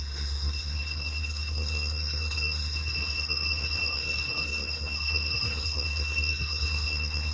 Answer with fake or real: fake